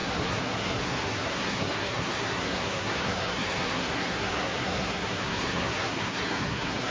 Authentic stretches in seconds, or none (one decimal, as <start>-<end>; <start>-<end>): none